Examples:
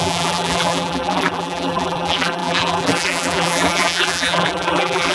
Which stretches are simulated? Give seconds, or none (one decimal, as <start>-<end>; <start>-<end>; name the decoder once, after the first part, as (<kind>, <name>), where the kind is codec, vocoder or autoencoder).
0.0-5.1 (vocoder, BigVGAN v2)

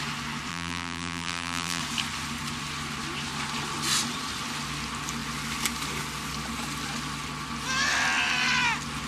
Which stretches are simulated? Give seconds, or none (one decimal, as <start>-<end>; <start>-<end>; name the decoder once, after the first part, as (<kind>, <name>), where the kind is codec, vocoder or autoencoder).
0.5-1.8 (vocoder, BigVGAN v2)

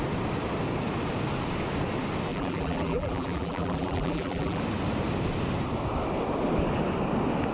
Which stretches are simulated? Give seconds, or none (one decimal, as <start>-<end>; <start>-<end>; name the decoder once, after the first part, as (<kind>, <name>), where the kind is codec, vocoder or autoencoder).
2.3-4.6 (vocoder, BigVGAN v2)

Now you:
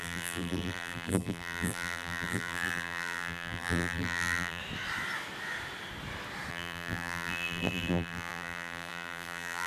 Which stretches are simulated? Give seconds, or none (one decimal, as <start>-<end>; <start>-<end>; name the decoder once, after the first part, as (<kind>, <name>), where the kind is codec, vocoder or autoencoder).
0.0-4.6 (vocoder, BigVGAN v2); 6.5-9.7

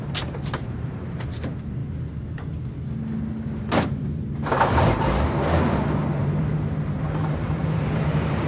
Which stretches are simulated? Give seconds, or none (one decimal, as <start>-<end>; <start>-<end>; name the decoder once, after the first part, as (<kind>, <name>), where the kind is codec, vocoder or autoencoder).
0.0-1.8 (vocoder, BigVGAN v2); 3.6-8.5